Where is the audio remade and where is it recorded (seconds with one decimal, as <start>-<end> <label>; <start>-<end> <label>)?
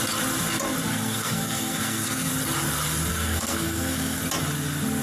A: 0.0-0.9 recorded; 0.9-2.3 remade; 2.3-3.1 recorded; 3.1-4.2 remade; 4.2-5.0 recorded